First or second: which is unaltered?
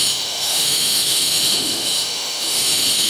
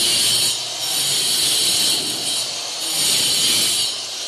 second